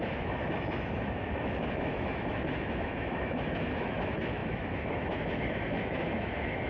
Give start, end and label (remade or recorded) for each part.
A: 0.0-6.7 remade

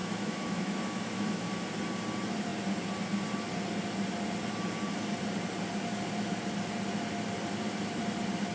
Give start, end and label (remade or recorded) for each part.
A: 0.0-1.5 remade; 1.5-8.5 recorded

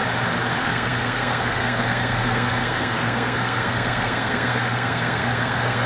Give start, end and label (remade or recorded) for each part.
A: 0.0-0.5 recorded; 0.5-5.9 remade

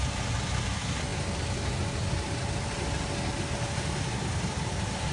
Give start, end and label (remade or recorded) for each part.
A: 0.0-5.1 recorded

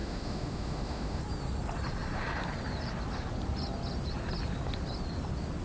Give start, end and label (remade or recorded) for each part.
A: 0.0-1.2 remade; 1.2-5.6 recorded

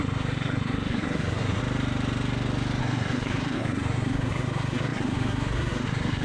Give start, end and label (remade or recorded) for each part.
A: 0.0-1.6 remade; 1.6-2.8 recorded; 2.8-6.2 remade

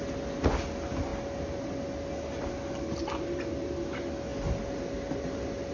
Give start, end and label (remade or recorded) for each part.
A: 0.0-5.7 recorded

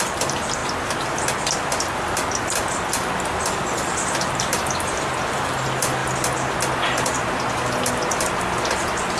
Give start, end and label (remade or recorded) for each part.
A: 0.0-0.6 remade; 0.6-3.5 recorded; 3.5-6.0 remade; 6.0-7.9 recorded; 7.9-9.2 remade